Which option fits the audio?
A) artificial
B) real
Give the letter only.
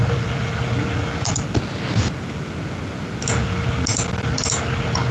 B